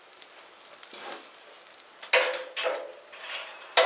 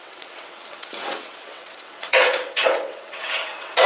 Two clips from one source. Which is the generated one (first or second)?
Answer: second